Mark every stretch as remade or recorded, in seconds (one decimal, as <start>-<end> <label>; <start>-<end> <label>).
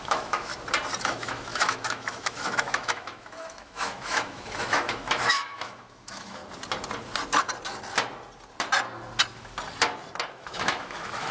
0.0-0.5 remade; 0.5-1.0 recorded; 1.0-6.4 remade; 6.4-10.3 recorded; 10.3-11.3 remade